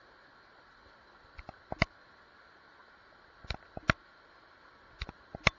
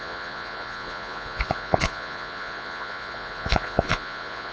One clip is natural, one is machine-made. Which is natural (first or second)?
first